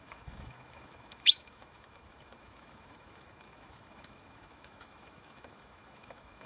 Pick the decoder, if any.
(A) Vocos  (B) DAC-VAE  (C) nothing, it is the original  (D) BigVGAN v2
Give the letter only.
B